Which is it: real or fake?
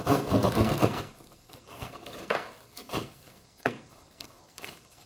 fake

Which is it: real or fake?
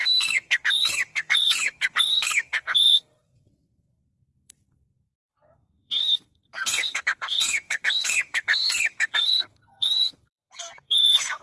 fake